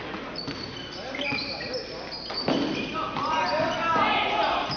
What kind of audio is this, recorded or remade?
recorded